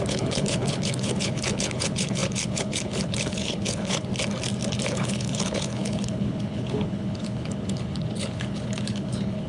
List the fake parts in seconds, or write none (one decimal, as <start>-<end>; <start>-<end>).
0.0-4.1; 4.9-9.5